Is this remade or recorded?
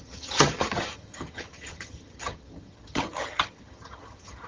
remade